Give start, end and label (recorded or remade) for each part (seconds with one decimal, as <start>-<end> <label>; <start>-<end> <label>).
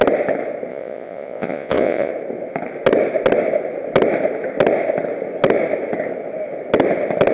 0.0-0.7 recorded; 0.7-2.1 remade; 2.1-7.3 recorded